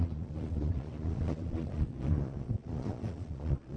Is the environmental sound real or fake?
fake